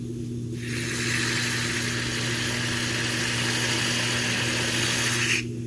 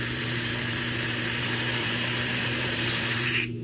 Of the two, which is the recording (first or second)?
first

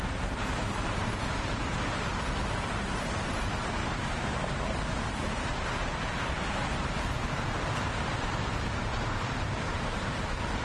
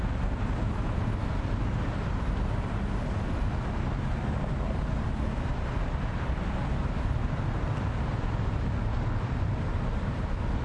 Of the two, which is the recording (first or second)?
second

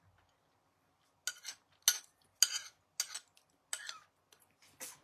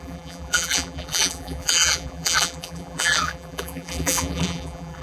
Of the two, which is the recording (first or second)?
first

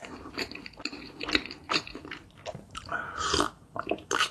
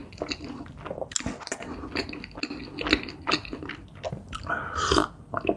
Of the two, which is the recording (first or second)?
second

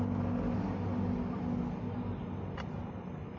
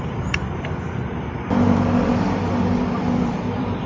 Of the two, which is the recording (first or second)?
first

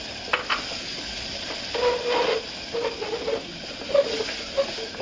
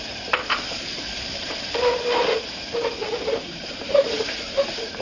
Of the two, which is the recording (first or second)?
first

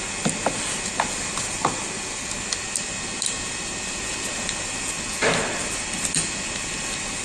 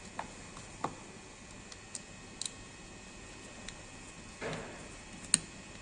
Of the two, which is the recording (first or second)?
second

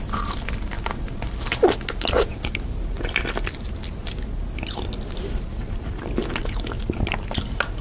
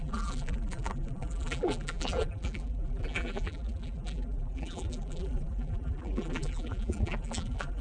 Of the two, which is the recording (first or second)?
first